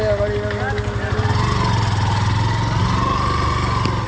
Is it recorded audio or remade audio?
recorded